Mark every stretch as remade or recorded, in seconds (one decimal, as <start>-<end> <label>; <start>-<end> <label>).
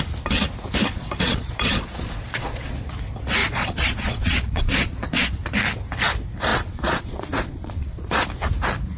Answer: 0.0-0.9 recorded; 0.9-2.7 remade; 2.7-3.4 recorded; 3.4-5.3 remade; 5.3-6.5 recorded; 6.5-8.2 remade; 8.2-9.0 recorded